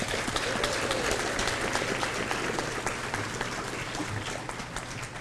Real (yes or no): yes